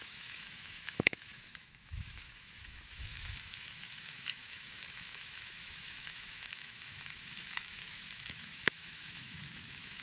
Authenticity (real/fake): fake